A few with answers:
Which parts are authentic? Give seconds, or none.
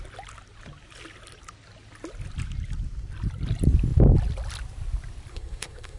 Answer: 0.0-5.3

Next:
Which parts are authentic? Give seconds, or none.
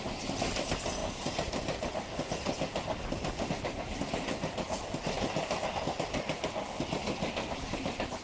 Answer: 0.0-8.2